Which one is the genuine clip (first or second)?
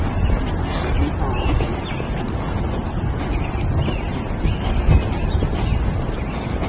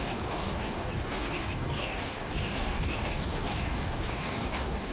first